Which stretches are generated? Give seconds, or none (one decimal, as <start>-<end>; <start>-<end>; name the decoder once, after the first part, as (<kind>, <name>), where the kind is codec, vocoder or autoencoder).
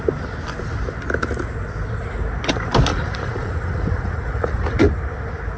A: 2.9-4.8 (vocoder, Vocos)